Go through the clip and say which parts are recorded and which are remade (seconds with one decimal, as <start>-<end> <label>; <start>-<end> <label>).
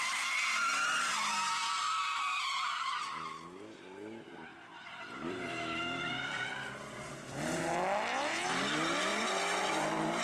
0.0-1.2 recorded; 1.2-2.0 remade; 2.0-4.5 recorded; 4.5-7.7 remade; 7.7-8.3 recorded; 8.3-9.2 remade; 9.2-10.2 recorded